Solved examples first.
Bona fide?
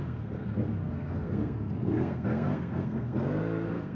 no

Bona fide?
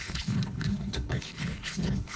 no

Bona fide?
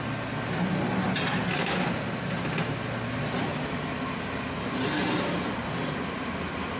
yes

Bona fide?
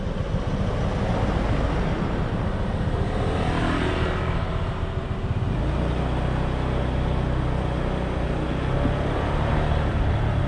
yes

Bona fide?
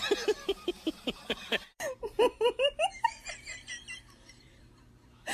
no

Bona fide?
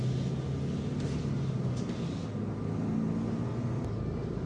yes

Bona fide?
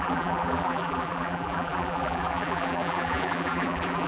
no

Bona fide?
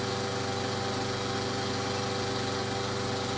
yes